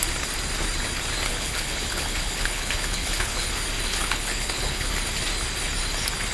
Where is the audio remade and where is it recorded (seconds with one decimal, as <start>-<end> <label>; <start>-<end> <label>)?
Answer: 0.0-1.3 recorded; 1.3-3.5 remade; 3.5-3.9 recorded; 3.9-4.9 remade; 4.9-6.3 recorded